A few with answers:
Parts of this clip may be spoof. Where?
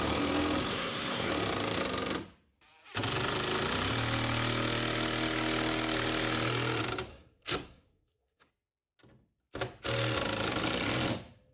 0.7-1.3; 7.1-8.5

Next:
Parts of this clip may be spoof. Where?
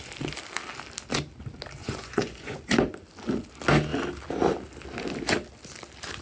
1.8-2.7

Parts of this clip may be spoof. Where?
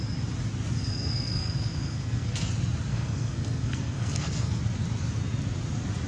0.8-2.5; 2.9-4.6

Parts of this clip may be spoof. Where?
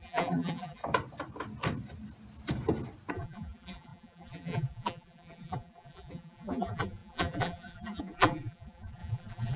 0.0-0.8; 3.1-9.6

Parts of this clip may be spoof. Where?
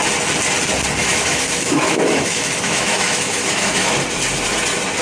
1.0-3.9